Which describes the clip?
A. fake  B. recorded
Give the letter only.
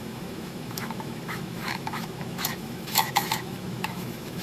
A